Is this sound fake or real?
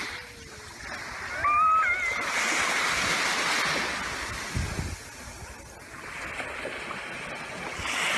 real